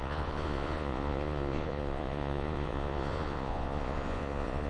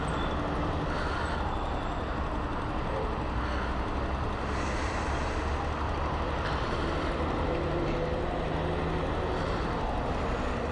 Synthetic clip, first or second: first